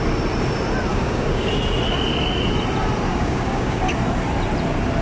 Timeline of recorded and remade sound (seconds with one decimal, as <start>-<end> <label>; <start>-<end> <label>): 0.0-0.9 recorded; 0.9-1.5 remade; 1.5-3.1 recorded; 3.1-3.8 remade; 3.8-5.0 recorded